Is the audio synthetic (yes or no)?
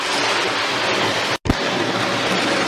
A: no